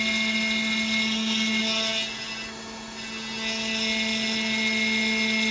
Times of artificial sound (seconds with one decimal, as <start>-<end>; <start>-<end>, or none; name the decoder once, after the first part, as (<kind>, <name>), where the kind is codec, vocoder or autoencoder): none